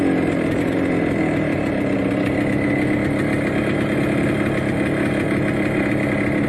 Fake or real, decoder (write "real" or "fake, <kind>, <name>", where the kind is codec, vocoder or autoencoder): real